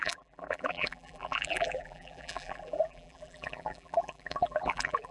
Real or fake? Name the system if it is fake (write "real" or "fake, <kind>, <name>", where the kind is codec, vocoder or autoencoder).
fake, vocoder, BigVGAN v2